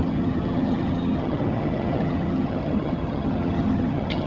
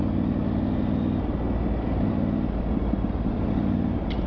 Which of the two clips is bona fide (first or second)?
second